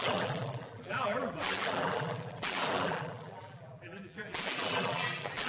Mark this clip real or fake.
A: fake